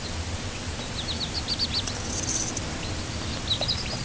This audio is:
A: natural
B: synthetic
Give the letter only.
A